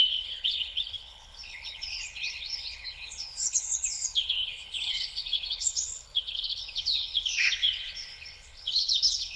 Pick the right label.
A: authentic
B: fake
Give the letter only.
B